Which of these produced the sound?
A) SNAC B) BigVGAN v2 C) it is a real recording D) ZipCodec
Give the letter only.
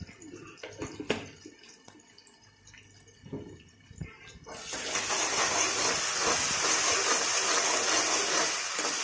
C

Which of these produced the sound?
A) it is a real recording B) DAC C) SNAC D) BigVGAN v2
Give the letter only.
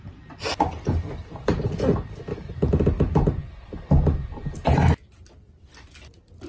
A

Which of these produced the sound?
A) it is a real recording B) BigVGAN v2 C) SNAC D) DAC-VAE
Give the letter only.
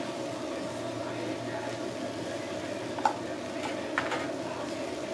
A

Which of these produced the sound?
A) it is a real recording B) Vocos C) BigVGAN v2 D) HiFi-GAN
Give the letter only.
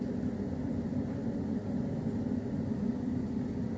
A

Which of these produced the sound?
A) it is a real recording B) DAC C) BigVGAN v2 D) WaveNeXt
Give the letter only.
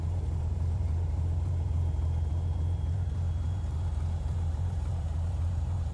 C